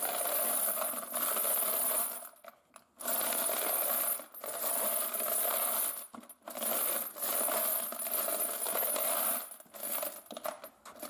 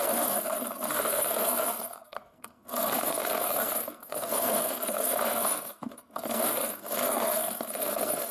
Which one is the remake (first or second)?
second